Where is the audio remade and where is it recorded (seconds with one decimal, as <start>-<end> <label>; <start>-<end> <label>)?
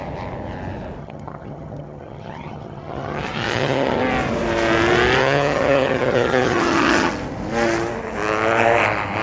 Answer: 0.0-1.0 recorded; 1.0-4.0 remade; 4.0-5.2 recorded; 5.2-7.1 remade; 7.1-9.2 recorded